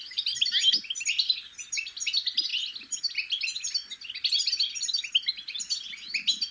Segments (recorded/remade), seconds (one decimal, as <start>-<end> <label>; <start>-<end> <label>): 0.0-6.5 recorded